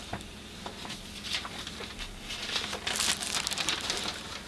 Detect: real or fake real